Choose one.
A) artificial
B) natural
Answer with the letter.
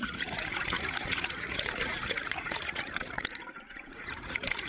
A